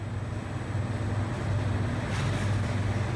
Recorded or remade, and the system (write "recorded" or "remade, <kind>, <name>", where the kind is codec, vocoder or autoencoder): recorded